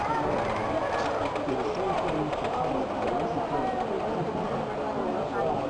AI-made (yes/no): no